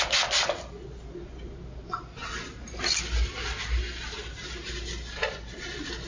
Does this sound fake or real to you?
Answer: real